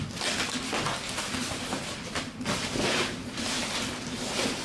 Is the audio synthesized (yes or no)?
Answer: no